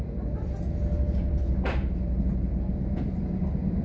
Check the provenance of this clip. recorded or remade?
recorded